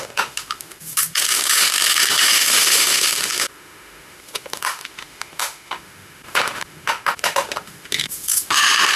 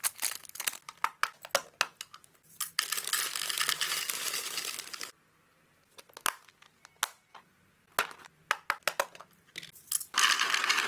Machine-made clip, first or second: first